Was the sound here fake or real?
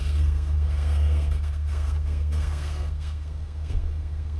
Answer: fake